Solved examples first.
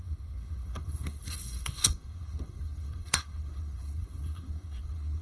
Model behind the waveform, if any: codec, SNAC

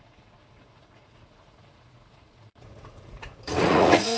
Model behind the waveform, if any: vocoder, Vocos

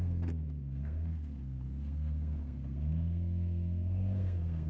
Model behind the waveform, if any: codec, SNAC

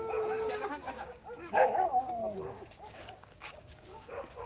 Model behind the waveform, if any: codec, DAC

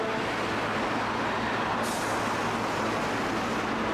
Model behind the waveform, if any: none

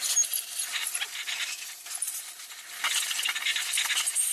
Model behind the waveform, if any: none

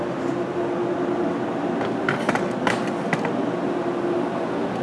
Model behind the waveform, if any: none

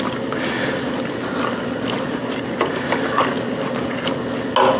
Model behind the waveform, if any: none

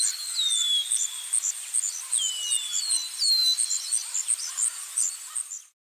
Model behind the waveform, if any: none